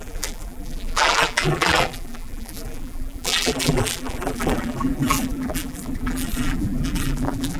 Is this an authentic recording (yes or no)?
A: no